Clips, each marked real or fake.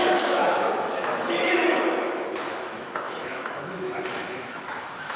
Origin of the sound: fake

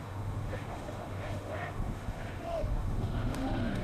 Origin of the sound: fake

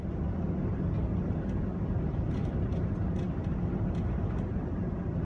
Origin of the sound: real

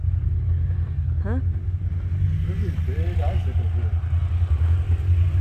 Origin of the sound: real